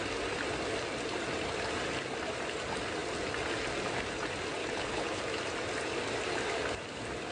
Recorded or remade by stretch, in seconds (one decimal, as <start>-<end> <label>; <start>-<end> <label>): 0.0-4.6 recorded; 4.6-5.2 remade; 5.2-7.3 recorded